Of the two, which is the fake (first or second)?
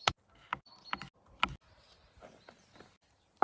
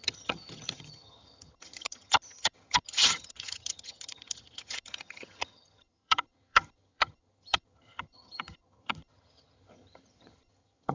second